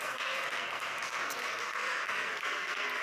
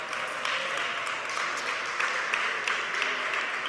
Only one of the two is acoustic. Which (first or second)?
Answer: second